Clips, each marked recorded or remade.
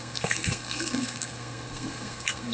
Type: remade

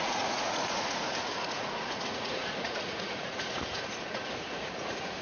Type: remade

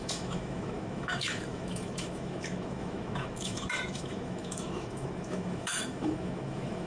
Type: remade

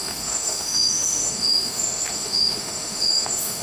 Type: remade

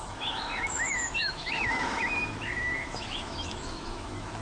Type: remade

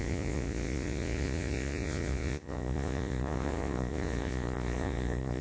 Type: remade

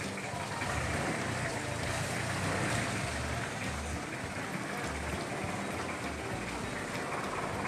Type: recorded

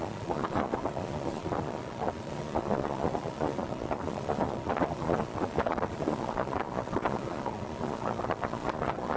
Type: remade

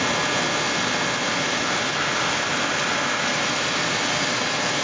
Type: recorded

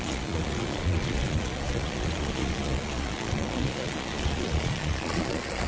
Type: remade